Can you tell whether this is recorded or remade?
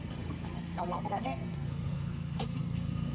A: remade